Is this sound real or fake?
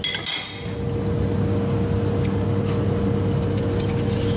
real